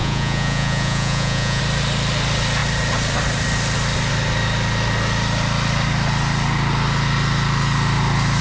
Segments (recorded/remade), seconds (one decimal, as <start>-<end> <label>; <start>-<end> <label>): 0.0-1.6 remade; 1.6-8.4 recorded